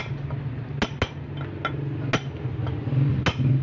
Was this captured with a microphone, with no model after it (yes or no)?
yes